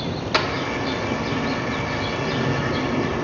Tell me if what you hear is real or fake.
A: real